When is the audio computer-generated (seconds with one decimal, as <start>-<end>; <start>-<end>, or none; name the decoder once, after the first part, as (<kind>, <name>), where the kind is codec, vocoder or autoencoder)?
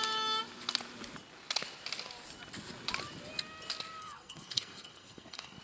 4.0-5.6 (codec, SNAC)